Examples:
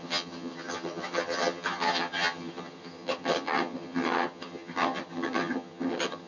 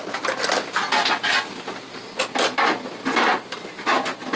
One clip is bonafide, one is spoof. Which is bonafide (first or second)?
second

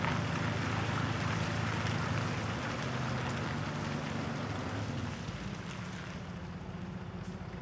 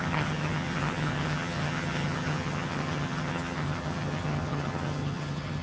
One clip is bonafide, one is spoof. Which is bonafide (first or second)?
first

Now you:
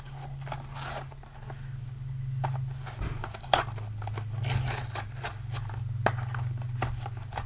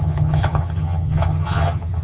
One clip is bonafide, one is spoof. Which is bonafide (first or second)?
first